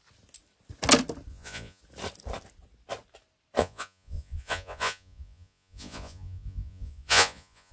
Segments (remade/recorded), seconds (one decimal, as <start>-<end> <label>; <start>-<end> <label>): 0.0-1.3 recorded; 1.3-1.8 remade; 1.8-3.6 recorded; 3.6-7.7 remade

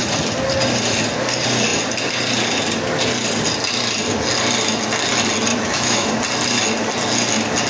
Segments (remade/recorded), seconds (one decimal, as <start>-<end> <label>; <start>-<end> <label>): 0.0-5.5 recorded; 5.5-6.1 remade; 6.1-7.7 recorded

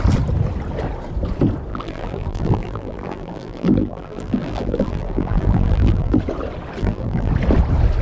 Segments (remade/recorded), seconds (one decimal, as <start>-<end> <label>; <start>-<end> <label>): 0.0-1.7 recorded; 1.7-6.2 remade; 6.2-6.8 recorded; 6.8-7.3 remade; 7.3-8.0 recorded

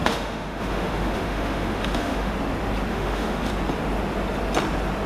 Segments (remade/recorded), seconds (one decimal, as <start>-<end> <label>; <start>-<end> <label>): 0.0-2.3 remade; 2.3-2.9 recorded; 2.9-3.5 remade; 3.5-5.1 recorded